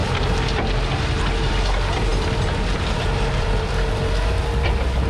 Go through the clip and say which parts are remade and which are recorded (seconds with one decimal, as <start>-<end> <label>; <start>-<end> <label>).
0.0-5.1 recorded